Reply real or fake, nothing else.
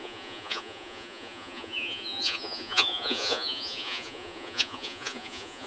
fake